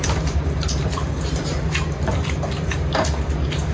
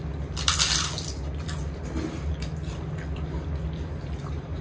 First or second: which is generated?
first